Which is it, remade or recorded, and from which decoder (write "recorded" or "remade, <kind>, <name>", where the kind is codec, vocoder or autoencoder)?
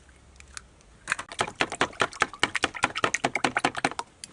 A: recorded